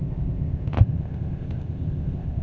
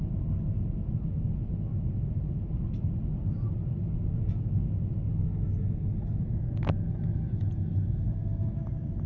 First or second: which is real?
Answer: second